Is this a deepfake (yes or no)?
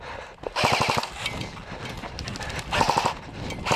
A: no